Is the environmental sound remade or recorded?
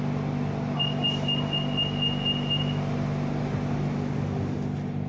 recorded